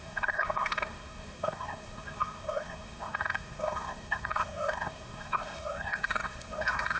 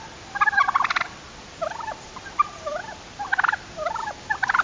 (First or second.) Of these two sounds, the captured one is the second